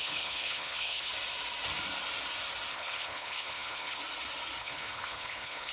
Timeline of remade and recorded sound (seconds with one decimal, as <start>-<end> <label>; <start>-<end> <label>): 0.0-1.1 remade; 1.1-2.7 recorded; 2.7-4.0 remade; 4.0-4.6 recorded; 4.6-5.7 remade